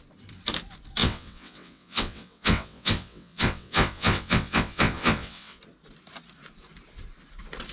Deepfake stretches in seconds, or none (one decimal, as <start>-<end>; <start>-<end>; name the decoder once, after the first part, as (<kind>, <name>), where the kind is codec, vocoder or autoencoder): 1.0-5.6 (vocoder, WaveNeXt)